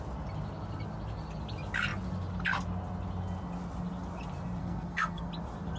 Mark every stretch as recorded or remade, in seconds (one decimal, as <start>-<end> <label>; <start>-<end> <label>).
0.0-4.6 recorded; 4.6-5.3 remade; 5.3-5.8 recorded